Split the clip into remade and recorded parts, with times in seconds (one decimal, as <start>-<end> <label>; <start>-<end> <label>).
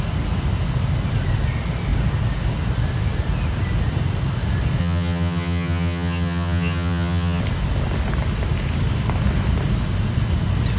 0.0-4.8 recorded; 4.8-7.4 remade; 7.4-10.8 recorded